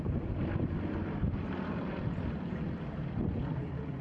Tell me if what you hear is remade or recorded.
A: remade